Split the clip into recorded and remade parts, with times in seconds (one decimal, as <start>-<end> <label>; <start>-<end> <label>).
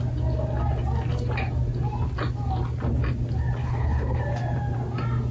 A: 0.0-3.6 recorded; 3.6-4.2 remade; 4.2-5.3 recorded